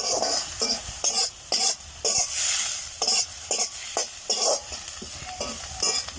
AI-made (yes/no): no